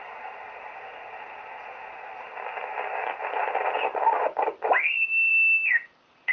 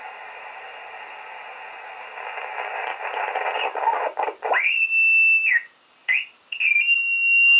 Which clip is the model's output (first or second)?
first